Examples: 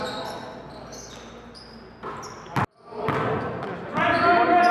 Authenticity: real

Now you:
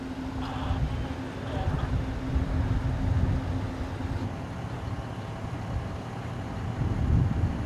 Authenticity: real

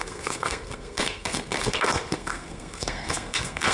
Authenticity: fake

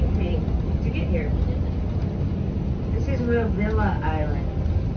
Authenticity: real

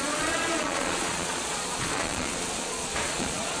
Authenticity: fake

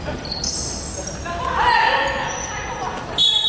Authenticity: real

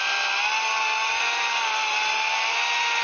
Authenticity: real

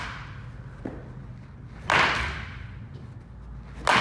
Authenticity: real